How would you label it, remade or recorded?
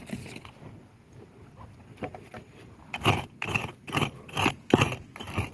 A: recorded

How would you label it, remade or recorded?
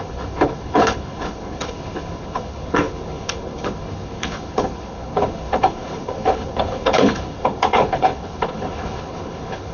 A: remade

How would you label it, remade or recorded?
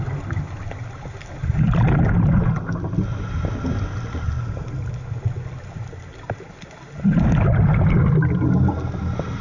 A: recorded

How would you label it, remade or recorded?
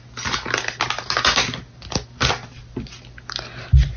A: recorded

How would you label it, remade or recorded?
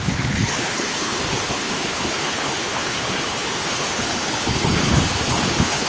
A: remade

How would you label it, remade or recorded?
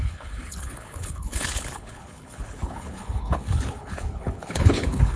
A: remade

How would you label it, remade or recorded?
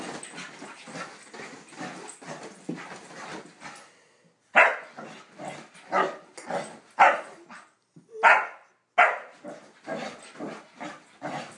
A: recorded